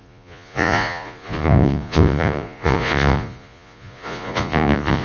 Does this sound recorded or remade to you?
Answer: remade